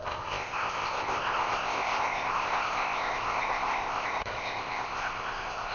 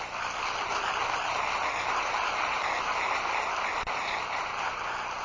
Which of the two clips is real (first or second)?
second